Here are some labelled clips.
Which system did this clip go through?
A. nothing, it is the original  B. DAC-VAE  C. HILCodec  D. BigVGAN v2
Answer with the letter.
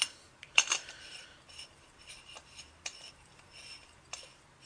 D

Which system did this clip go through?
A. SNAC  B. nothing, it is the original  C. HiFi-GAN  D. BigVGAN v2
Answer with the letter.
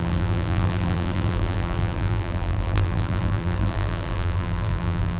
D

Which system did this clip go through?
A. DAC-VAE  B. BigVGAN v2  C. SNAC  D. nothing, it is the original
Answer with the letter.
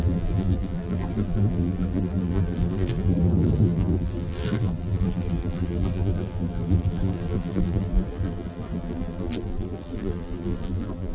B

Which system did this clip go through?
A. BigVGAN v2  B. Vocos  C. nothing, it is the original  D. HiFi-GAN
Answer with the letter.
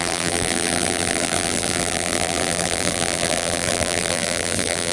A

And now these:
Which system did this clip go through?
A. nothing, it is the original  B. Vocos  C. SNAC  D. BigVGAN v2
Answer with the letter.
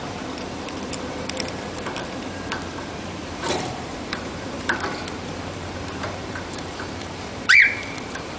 D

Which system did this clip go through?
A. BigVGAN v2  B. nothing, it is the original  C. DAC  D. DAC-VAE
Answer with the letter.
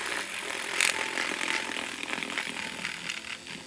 B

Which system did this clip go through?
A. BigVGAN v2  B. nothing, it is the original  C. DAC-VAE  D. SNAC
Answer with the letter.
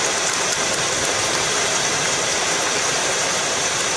A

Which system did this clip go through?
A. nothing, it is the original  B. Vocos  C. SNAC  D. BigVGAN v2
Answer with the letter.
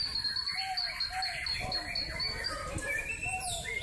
D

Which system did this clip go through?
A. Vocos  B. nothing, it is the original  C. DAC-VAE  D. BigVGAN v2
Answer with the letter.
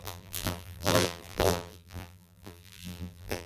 D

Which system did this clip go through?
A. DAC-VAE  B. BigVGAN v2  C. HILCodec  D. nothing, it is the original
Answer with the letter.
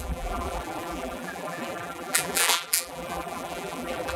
B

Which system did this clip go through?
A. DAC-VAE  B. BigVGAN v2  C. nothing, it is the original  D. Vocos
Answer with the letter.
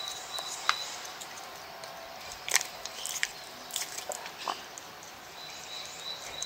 B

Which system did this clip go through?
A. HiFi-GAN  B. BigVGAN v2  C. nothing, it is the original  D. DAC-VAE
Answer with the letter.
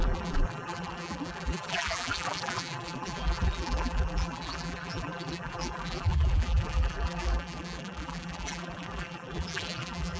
B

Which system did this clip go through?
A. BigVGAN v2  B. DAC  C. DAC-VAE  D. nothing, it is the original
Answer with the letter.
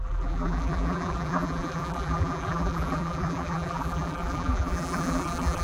A